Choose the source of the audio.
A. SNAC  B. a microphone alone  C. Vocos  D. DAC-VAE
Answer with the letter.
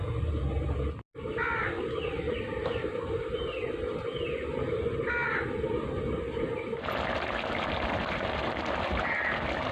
B